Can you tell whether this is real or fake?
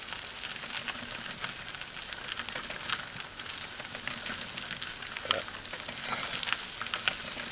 real